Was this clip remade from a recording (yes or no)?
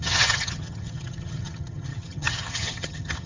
yes